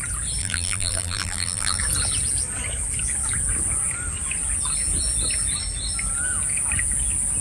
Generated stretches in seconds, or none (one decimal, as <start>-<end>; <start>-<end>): 0.4-1.8